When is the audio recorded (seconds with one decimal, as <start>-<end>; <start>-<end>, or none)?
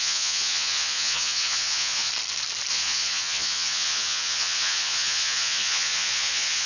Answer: 2.1-2.7